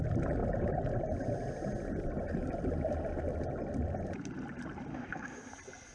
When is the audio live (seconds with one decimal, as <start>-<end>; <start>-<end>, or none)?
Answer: 0.0-4.9; 5.5-5.9